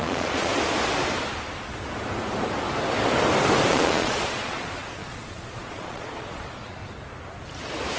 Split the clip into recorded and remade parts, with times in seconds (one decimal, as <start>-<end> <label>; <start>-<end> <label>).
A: 0.0-0.5 remade; 0.5-3.7 recorded; 3.7-6.8 remade; 6.8-8.0 recorded